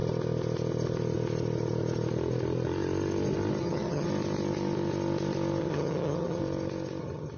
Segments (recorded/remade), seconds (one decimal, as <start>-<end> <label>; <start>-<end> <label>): 0.0-3.6 recorded; 3.6-4.1 remade; 4.1-5.6 recorded; 5.6-6.4 remade; 6.4-7.0 recorded; 7.0-7.4 remade